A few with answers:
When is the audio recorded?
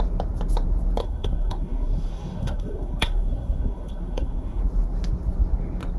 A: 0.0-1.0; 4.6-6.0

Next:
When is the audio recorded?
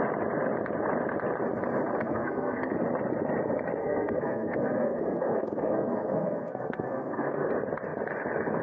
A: 0.0-2.0; 2.7-3.8; 7.5-8.6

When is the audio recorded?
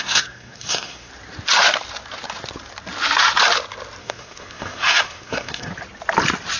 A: 1.1-4.0; 5.7-6.6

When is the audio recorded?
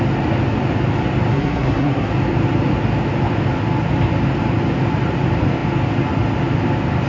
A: 0.0-1.3; 2.1-7.1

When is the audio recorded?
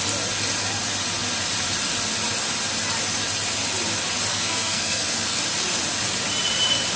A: 0.0-4.3; 5.4-7.0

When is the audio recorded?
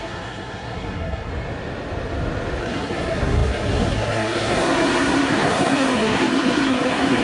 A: 1.3-2.6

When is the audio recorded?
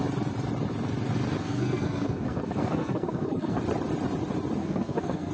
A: 0.0-1.4; 3.6-4.6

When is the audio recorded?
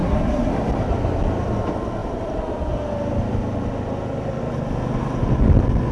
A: 0.5-5.9